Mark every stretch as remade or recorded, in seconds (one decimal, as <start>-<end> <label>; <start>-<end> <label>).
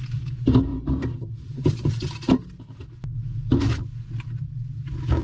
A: 0.0-5.2 recorded